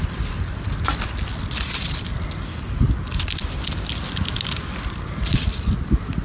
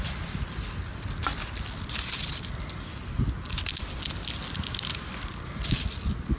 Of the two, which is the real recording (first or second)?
second